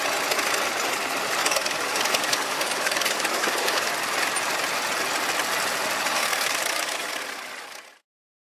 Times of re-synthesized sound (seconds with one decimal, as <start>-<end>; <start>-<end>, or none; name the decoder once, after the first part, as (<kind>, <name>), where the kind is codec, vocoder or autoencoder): 1.4-3.9 (codec, DAC); 6.3-7.1